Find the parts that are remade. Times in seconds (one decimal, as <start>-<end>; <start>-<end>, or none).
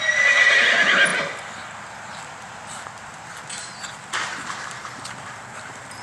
none